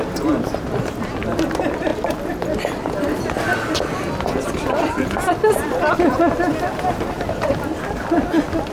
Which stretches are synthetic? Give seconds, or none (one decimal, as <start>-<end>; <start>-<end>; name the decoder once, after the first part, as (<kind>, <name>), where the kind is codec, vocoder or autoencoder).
none